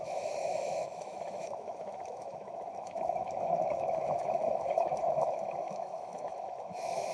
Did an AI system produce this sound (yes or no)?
yes